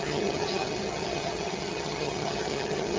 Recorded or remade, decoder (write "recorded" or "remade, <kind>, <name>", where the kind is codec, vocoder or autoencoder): remade, vocoder, HiFi-GAN